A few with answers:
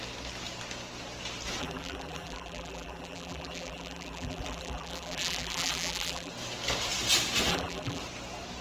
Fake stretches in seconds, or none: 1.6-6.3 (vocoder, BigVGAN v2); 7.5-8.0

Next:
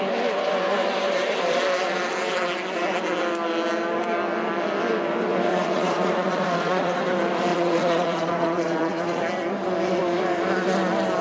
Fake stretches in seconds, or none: 5.5-7.0 (vocoder, Vocos); 7.5-9.2

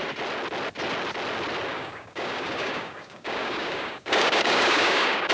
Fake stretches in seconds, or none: 1.7-5.3 (codec, DAC)

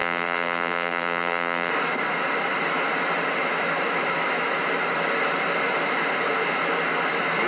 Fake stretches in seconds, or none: 0.0-1.7 (vocoder, BigVGAN v2)

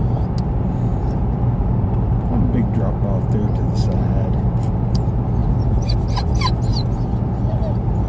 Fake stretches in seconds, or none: none

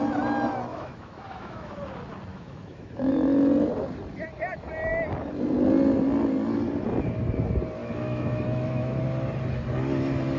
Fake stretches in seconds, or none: 0.7-1.8 (autoencoder, DAC-VAE); 2.3-3.1; 7.8-9.0

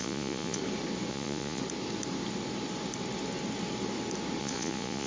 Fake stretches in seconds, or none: 0.0-0.6 (vocoder, Vocos); 1.1-1.6; 4.4-5.1

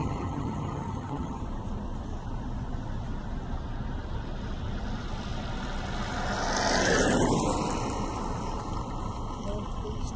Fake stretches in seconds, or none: 0.0-1.4 (vocoder, HiFi-GAN)